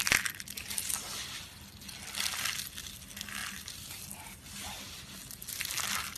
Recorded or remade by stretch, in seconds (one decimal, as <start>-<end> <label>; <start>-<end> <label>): 0.0-3.4 recorded; 3.4-3.9 remade; 3.9-6.2 recorded